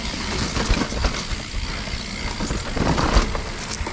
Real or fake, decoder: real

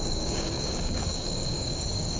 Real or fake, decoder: fake, codec, DAC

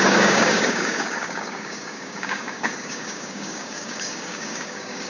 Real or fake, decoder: fake, codec, DAC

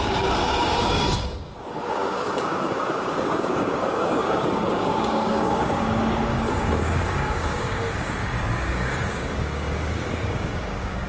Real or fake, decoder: fake, codec, DAC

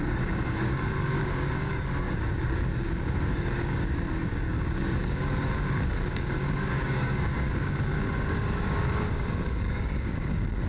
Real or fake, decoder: fake, codec, DAC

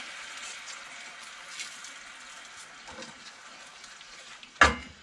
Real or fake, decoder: real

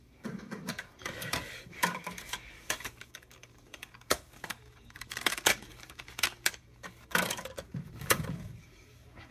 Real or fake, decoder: fake, codec, DAC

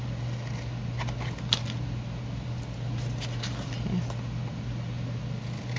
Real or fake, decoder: real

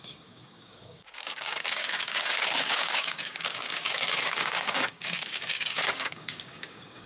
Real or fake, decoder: fake, codec, DAC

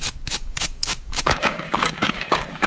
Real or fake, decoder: fake, codec, DAC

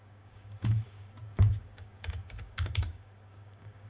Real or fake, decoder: fake, codec, DAC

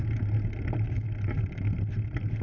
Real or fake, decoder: real